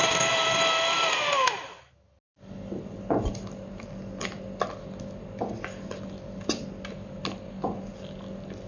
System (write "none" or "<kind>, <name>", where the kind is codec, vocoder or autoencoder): none